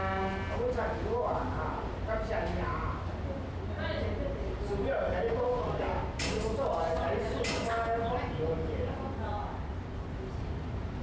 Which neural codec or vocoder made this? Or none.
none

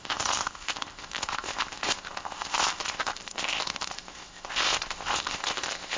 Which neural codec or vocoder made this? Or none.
codec, ZipCodec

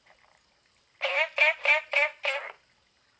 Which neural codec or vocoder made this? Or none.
none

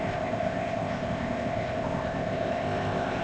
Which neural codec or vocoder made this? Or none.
codec, ZipCodec